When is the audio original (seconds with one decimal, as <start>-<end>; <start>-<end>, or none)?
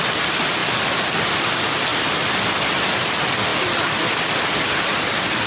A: 0.0-5.5